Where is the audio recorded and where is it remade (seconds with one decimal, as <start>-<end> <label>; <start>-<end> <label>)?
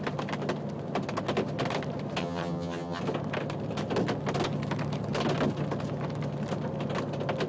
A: 0.0-2.2 recorded; 2.2-3.0 remade; 3.0-7.5 recorded